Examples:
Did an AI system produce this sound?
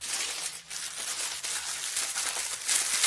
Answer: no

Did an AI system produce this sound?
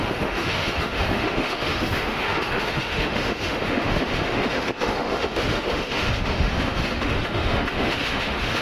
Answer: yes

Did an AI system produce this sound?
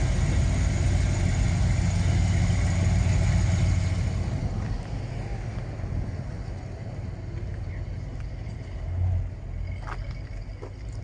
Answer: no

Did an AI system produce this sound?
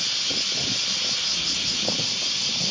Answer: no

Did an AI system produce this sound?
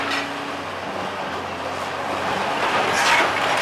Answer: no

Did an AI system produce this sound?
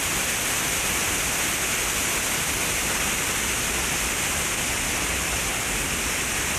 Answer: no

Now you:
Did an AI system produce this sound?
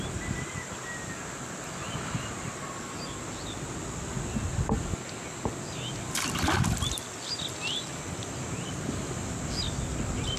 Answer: no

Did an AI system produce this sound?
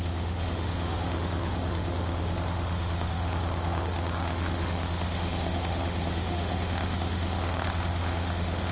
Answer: yes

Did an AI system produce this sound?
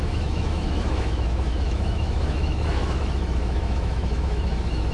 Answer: yes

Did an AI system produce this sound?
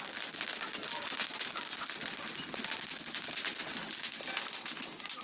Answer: no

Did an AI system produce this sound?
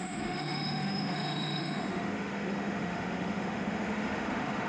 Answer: yes